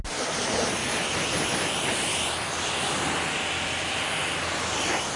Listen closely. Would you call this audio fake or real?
real